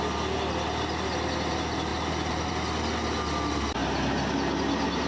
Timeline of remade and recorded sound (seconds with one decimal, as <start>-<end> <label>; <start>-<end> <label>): 0.0-1.9 recorded; 1.9-2.5 remade; 2.5-5.1 recorded